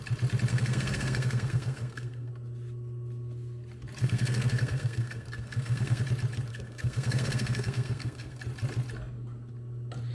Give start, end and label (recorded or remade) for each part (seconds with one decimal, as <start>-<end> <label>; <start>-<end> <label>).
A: 0.0-0.5 recorded; 0.5-2.3 remade; 2.3-4.0 recorded; 4.0-6.0 remade; 6.0-6.5 recorded; 6.5-8.4 remade; 8.4-10.1 recorded